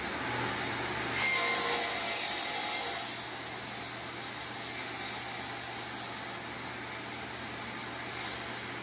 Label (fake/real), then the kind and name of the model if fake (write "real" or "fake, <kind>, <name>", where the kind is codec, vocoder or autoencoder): real